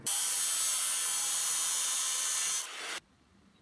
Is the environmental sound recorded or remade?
remade